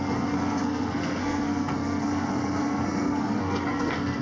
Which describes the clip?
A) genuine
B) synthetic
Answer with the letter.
B